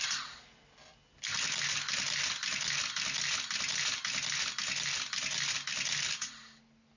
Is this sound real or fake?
real